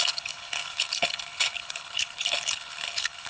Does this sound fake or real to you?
fake